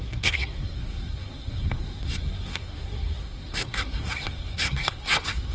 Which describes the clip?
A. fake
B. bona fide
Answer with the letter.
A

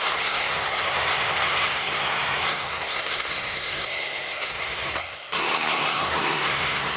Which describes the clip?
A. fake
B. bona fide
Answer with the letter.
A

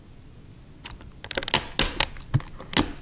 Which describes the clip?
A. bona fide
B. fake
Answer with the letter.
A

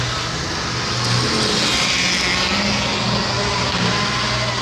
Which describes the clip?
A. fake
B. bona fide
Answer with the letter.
B